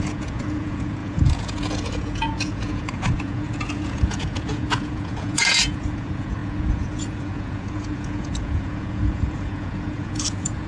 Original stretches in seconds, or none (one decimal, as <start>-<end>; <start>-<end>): none